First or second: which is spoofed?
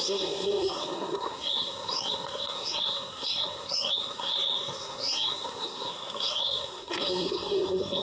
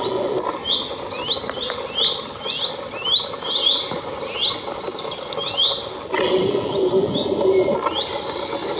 first